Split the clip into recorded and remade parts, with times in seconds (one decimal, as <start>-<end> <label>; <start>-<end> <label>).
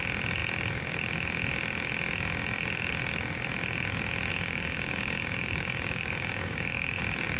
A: 0.0-4.3 recorded; 4.3-7.0 remade; 7.0-7.4 recorded